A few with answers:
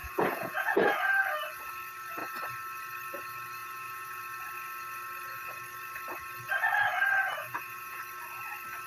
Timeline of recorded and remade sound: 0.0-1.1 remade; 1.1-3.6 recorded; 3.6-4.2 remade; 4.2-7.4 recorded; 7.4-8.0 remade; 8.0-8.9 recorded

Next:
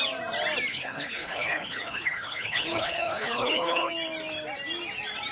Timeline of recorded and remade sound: 0.0-0.7 recorded; 0.7-3.9 remade; 3.9-5.3 recorded

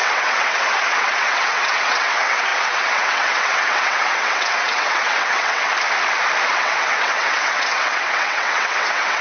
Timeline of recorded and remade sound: 0.0-5.7 remade; 5.7-6.5 recorded; 6.5-9.2 remade

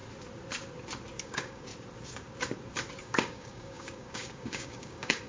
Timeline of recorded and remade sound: 0.0-1.2 recorded; 1.2-1.7 remade; 1.7-3.0 recorded; 3.0-5.3 remade